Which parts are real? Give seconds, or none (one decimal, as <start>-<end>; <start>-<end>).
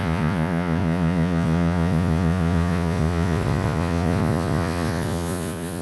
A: none